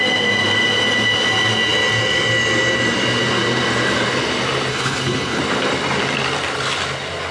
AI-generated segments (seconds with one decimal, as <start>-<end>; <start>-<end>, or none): 4.7-5.4